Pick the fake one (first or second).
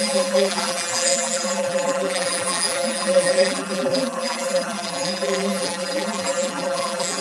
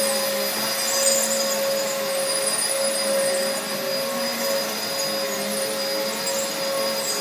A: first